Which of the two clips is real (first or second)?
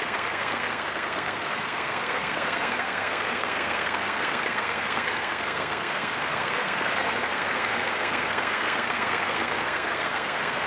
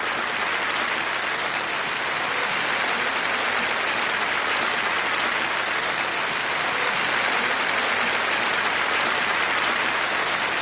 second